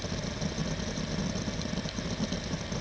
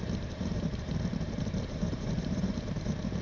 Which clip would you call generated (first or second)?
second